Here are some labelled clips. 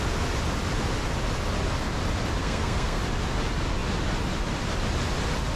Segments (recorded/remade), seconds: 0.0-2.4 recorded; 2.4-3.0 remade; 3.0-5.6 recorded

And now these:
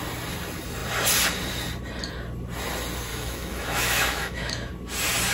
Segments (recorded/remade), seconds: 0.0-3.1 recorded; 3.1-4.7 remade; 4.7-5.3 recorded

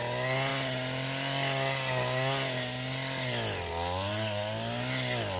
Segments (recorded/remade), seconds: 0.0-5.4 recorded

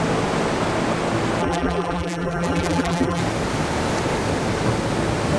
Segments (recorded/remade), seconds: 0.0-1.4 recorded; 1.4-3.2 remade; 3.2-5.4 recorded

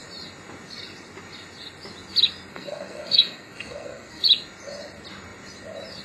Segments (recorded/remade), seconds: 0.0-2.5 recorded; 2.5-4.2 remade; 4.2-6.0 recorded

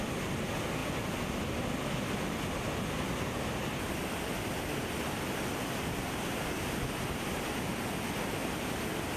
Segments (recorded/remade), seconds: 0.0-9.2 recorded